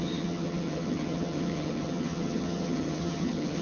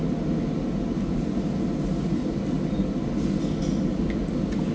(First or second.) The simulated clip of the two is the first